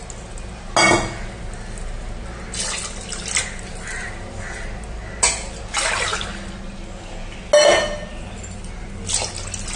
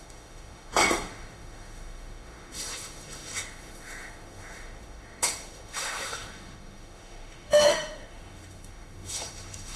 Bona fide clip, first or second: first